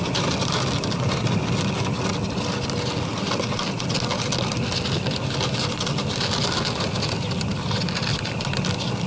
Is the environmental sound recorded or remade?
recorded